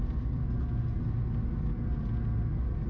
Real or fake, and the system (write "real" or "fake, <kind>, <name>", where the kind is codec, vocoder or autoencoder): real